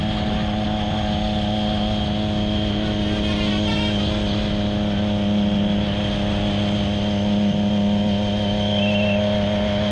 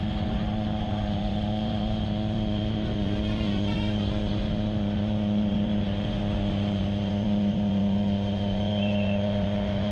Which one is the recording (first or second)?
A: first